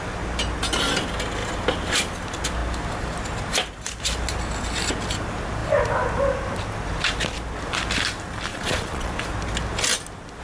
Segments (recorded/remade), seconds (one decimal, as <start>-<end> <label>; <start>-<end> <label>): 0.0-8.5 recorded; 8.5-9.1 remade; 9.1-10.4 recorded